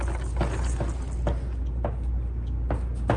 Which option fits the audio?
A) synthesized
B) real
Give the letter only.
B